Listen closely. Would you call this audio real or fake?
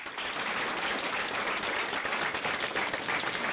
real